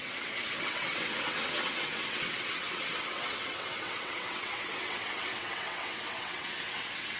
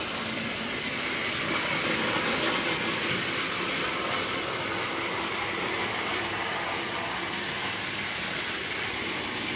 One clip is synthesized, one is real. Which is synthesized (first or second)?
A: first